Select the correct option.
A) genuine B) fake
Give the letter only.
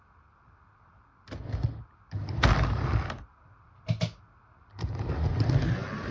A